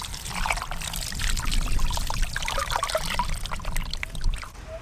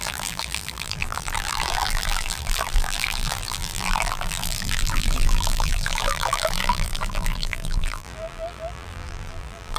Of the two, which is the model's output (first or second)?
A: second